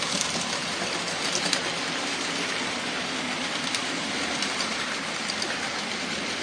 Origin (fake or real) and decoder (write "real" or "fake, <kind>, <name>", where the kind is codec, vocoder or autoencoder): fake, vocoder, BigVGAN v2